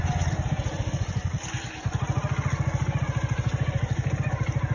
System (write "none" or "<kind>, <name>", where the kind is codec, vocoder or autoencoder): none